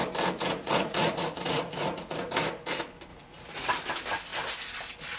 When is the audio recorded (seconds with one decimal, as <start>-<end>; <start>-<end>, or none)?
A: 0.0-0.4; 2.5-3.1; 3.7-5.2